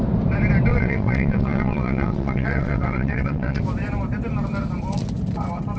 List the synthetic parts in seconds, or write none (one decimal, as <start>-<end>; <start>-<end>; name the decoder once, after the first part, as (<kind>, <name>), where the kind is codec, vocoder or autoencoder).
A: 0.7-3.6 (vocoder, WaveNeXt)